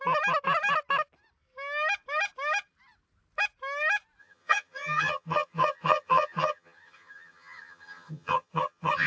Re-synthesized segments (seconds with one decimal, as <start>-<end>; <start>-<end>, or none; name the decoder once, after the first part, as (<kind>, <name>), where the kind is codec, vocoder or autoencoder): 4.2-9.1 (vocoder, HiFi-GAN)